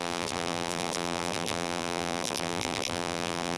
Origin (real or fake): fake